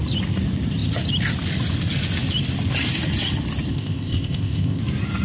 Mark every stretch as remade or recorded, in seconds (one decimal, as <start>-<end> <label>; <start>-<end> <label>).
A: 0.0-3.7 recorded; 3.7-4.8 remade; 4.8-5.2 recorded